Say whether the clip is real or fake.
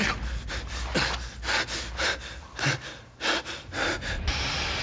real